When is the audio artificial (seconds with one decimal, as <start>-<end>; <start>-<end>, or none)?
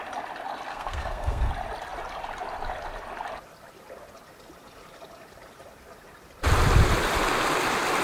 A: 0.7-1.5